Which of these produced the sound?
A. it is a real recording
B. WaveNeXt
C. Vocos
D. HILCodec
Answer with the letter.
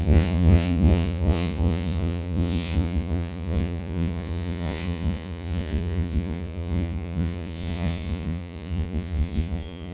C